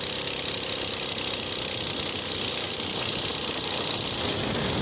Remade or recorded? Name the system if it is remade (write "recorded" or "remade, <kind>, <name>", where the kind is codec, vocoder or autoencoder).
recorded